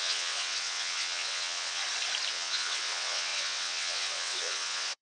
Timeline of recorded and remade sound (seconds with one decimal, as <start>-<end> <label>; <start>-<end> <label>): 0.0-1.8 remade; 1.8-2.3 recorded; 2.3-5.0 remade